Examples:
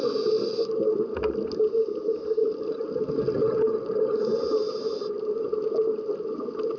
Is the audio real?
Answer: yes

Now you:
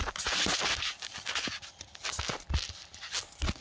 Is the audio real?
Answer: yes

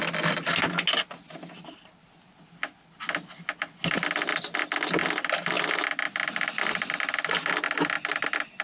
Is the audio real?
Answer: yes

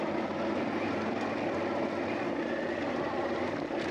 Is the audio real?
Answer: yes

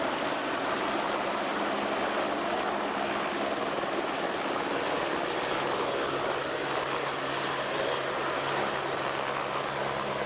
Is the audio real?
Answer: yes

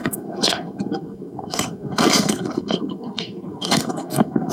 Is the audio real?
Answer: no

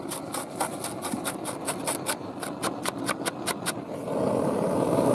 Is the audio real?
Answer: yes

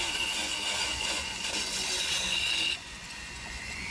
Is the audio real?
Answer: no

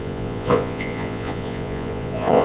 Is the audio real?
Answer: no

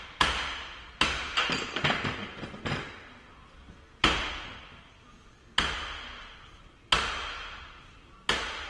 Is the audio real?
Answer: yes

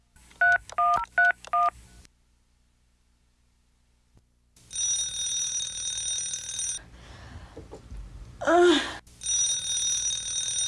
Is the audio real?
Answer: yes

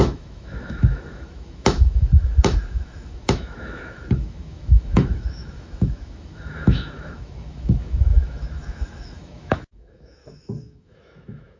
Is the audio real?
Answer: no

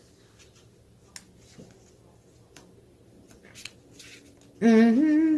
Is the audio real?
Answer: yes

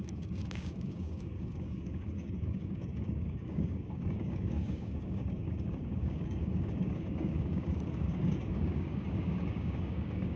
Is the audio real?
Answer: no